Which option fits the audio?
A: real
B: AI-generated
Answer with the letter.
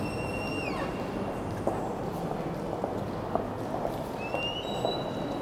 A